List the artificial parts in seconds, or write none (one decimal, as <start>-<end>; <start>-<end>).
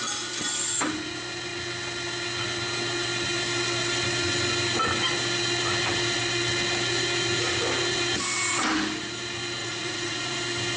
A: 9.6-10.4